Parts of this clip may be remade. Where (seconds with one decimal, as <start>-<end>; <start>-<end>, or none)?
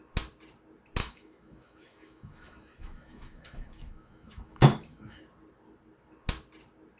1.0-5.2